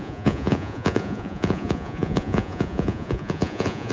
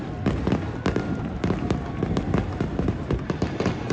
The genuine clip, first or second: second